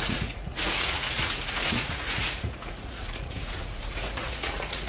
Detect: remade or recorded remade